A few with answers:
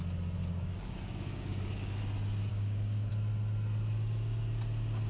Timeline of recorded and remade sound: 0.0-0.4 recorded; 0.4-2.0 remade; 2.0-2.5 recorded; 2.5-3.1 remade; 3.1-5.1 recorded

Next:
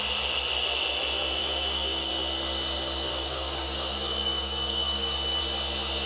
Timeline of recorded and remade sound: 0.0-1.4 recorded; 1.4-2.1 remade; 2.1-3.1 recorded; 3.1-5.4 remade; 5.4-6.1 recorded